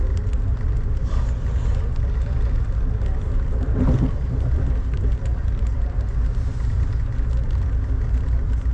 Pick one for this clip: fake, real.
real